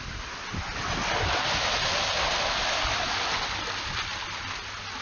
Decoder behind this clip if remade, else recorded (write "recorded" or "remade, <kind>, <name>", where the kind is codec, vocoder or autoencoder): recorded